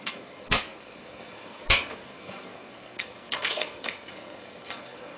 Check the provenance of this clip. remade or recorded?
remade